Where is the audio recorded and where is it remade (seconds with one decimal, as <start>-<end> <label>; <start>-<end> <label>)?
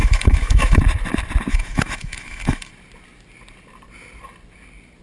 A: 0.0-0.8 remade; 0.8-1.5 recorded; 1.5-2.7 remade; 2.7-5.0 recorded